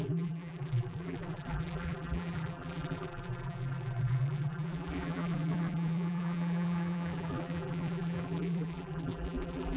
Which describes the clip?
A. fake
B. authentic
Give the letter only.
A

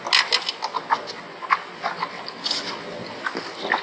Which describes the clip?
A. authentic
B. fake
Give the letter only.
A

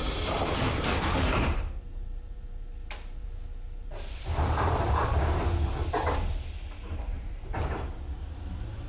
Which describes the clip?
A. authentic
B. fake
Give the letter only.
B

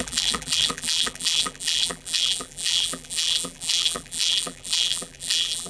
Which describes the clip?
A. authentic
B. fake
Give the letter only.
B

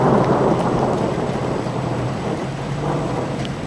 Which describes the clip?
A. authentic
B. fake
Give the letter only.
B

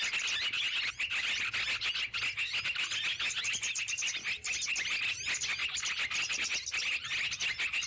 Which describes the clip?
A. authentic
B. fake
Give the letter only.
A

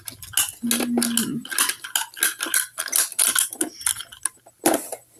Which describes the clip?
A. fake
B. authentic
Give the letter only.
B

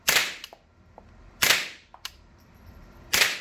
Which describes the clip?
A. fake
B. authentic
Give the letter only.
A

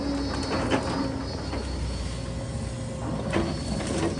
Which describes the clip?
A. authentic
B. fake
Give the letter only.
A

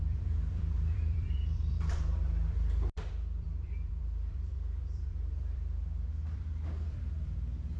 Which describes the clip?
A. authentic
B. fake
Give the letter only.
B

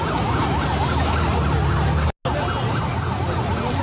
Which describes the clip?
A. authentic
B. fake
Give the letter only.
A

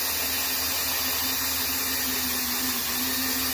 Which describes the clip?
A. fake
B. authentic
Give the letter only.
B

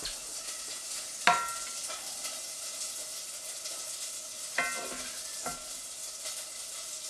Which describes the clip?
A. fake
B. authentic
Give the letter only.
B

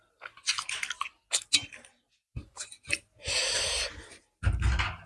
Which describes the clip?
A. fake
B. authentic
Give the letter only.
B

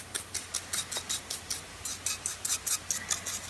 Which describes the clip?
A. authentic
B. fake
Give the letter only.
A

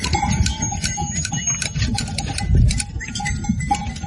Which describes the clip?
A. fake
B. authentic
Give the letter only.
B